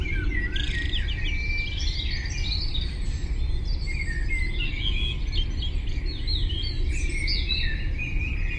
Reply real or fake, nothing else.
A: real